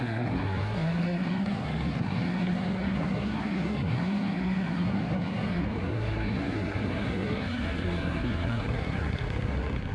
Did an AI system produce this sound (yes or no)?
yes